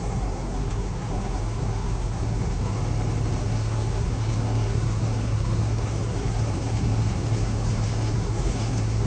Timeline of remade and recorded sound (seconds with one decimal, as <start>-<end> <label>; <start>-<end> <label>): 0.0-2.8 remade; 2.8-3.4 recorded; 3.4-9.1 remade